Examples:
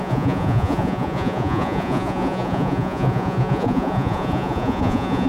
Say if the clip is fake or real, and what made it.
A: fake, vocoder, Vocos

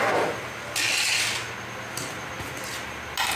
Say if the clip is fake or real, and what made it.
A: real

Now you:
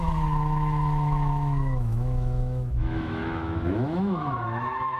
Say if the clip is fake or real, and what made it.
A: fake, autoencoder, DAC-VAE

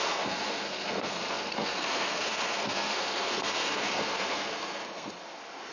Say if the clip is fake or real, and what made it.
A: fake, codec, SNAC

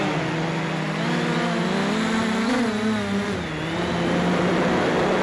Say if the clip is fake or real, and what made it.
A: real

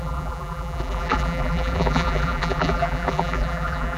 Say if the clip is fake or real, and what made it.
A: fake, vocoder, BigVGAN v2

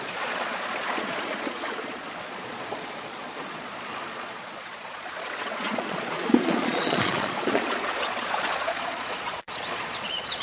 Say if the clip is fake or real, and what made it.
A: fake, vocoder, Vocos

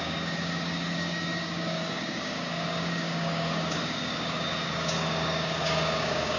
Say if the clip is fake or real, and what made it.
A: fake, codec, DAC